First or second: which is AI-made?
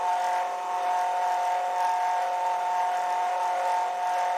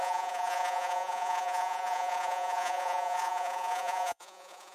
second